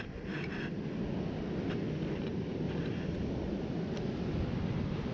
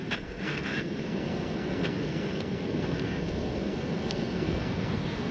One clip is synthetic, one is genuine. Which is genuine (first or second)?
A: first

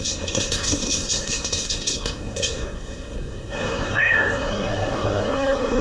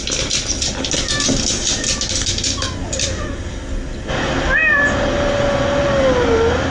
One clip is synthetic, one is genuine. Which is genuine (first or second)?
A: second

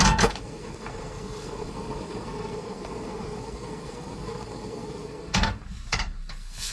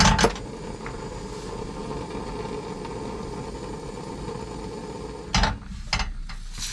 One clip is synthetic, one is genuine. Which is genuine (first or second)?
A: second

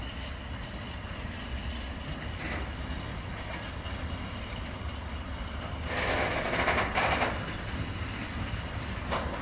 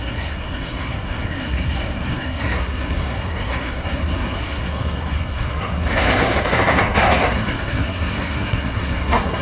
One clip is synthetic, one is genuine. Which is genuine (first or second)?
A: first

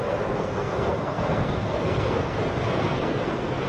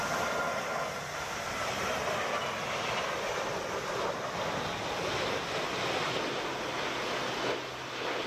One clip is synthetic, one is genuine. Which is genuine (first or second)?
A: second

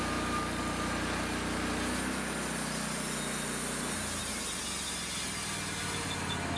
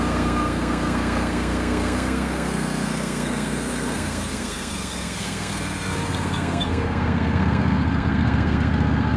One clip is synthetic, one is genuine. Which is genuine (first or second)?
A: first